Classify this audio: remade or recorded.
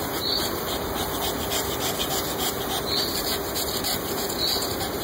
recorded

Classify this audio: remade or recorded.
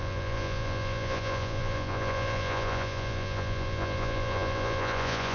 remade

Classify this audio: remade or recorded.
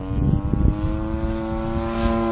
recorded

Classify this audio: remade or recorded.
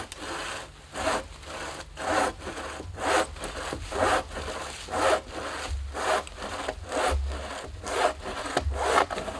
recorded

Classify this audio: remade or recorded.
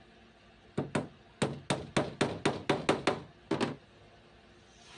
recorded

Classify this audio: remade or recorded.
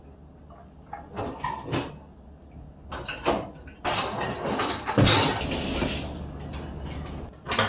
recorded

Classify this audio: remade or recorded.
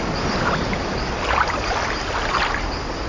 recorded